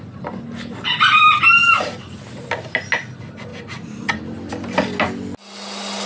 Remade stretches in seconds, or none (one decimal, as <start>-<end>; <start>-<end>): 1.6-2.1; 3.5-4.5